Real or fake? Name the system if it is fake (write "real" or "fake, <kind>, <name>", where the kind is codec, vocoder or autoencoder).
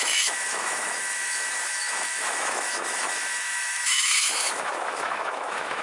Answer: fake, autoencoder, DAC-VAE